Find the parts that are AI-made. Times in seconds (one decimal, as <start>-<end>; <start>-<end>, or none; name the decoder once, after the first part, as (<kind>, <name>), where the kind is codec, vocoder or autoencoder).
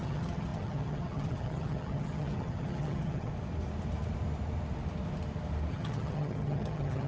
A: 0.0-3.3 (vocoder, HiFi-GAN); 5.7-7.1